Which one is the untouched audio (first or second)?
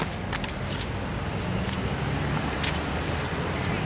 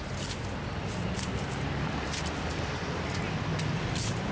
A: first